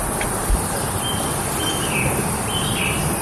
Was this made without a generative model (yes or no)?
yes